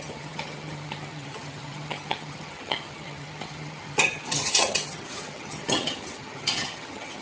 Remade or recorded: remade